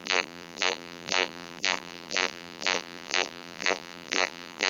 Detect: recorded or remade remade